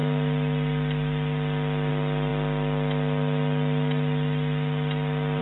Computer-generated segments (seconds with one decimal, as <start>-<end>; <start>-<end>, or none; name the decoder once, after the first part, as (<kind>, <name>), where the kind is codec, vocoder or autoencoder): none